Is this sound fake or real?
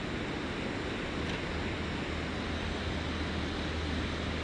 real